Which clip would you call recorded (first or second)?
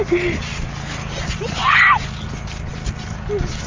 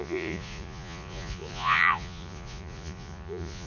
first